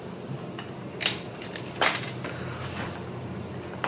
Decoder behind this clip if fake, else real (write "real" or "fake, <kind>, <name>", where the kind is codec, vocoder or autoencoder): real